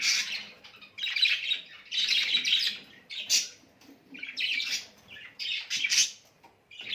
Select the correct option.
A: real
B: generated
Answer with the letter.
B